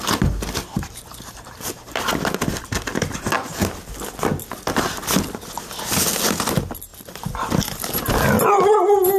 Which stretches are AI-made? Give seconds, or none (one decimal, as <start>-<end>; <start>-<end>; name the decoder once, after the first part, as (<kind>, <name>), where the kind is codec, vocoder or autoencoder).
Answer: 0.6-2.0 (vocoder, BigVGAN v2)